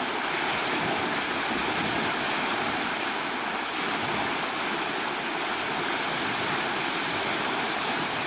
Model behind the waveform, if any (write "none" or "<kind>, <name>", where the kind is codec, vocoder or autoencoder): none